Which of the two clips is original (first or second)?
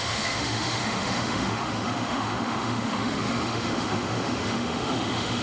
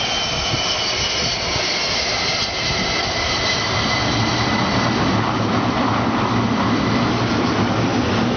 second